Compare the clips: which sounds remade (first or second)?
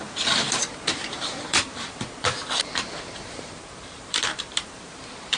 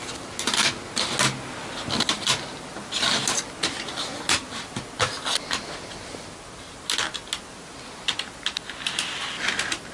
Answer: first